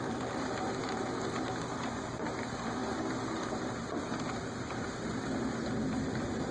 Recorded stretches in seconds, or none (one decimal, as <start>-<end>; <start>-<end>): 0.0-6.5